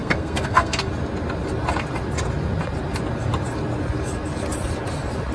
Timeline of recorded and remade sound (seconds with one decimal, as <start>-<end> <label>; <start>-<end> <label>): 0.0-0.9 remade; 0.9-5.3 recorded